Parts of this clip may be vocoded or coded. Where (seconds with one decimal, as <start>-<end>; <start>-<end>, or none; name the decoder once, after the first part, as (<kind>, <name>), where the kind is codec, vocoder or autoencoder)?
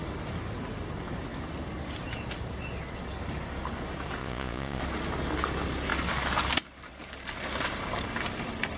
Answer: 4.2-4.8 (vocoder, Vocos)